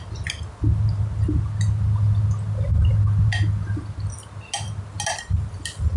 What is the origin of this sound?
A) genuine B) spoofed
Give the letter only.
A